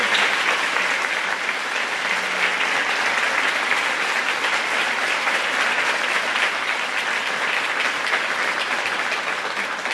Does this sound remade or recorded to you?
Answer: recorded